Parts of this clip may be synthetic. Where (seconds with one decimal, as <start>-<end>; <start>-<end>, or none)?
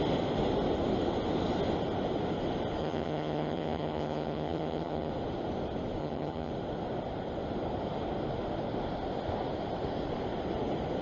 2.8-5.1; 6.0-6.5